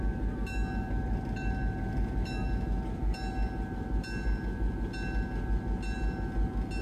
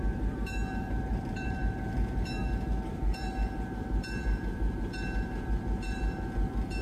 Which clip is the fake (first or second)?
second